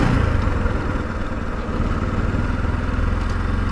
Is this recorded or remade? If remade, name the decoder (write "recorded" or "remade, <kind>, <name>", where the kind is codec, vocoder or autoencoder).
recorded